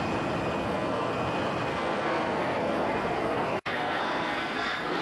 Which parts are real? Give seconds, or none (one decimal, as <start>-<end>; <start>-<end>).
0.0-0.6; 1.1-1.7